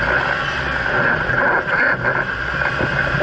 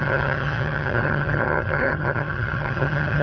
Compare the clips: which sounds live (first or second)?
first